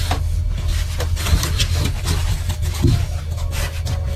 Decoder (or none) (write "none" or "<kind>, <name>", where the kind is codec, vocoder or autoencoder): none